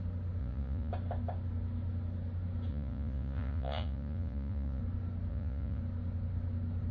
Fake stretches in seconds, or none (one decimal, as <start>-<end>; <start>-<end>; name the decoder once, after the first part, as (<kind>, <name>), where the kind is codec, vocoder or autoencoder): 0.4-0.9 (vocoder, Vocos); 2.7-4.8; 5.3-5.8